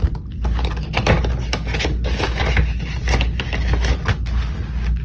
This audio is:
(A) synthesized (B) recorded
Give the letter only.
B